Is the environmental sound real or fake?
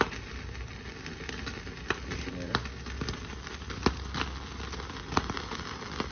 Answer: real